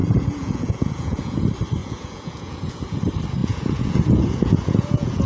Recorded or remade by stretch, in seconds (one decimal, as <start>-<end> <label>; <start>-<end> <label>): 0.0-1.4 remade; 1.4-1.8 recorded; 1.8-3.0 remade; 3.0-3.4 recorded; 3.4-5.3 remade